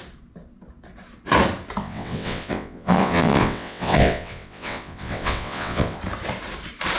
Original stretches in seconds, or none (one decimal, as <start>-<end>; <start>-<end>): 0.0-1.8; 6.0-7.0